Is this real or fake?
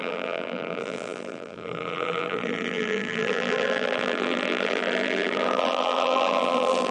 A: fake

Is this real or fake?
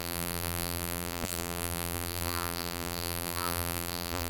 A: fake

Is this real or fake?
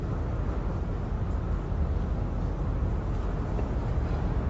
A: real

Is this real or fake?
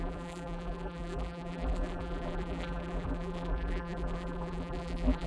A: fake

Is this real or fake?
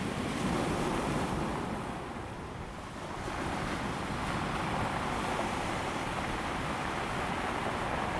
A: real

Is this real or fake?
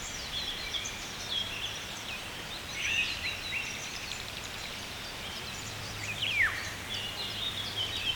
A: fake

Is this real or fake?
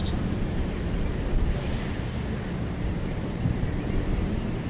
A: fake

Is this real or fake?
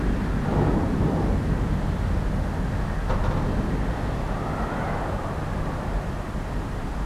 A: real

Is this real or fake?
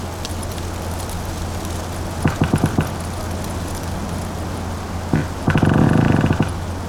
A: real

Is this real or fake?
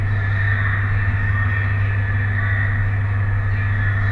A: real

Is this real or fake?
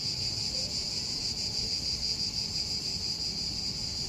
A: real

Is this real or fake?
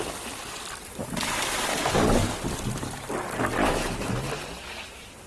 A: fake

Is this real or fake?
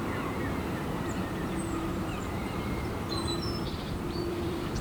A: fake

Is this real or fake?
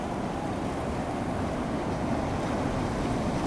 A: fake